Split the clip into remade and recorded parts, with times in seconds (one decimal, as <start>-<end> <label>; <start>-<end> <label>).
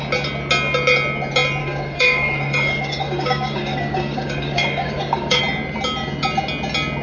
0.0-1.6 recorded; 1.6-5.4 remade; 5.4-7.0 recorded